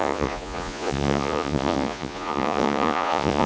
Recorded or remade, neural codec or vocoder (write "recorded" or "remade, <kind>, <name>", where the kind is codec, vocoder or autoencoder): remade, vocoder, Vocos